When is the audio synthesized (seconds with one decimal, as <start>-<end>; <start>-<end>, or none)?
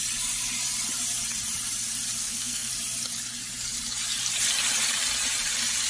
2.2-2.7